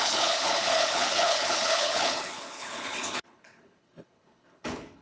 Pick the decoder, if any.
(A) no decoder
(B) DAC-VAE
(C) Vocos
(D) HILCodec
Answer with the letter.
D